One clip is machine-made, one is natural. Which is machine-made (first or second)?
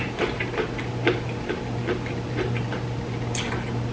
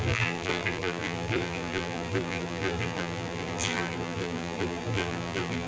second